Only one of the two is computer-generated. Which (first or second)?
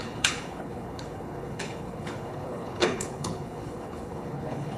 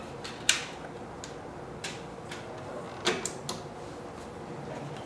first